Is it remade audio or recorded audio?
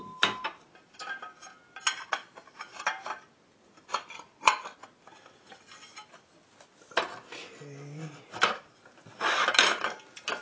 recorded